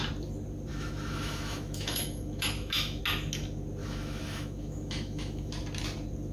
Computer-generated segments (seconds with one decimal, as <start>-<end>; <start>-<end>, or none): 0.7-3.0; 3.8-5.5